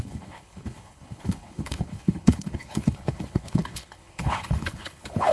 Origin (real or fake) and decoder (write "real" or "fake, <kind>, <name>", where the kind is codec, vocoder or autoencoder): fake, codec, HILCodec